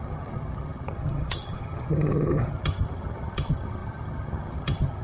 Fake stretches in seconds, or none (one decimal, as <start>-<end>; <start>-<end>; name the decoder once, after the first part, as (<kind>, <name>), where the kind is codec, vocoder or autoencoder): 0.0-5.0 (vocoder, HiFi-GAN)